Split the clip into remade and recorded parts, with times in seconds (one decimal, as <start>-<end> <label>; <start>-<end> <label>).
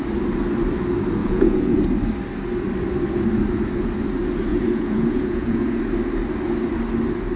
0.0-1.2 recorded; 1.2-1.8 remade; 1.8-4.5 recorded; 4.5-5.8 remade; 5.8-7.4 recorded